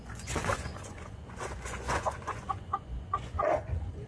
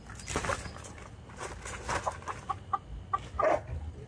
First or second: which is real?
second